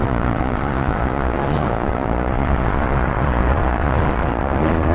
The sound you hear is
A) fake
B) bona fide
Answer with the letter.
A